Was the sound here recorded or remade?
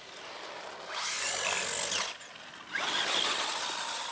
recorded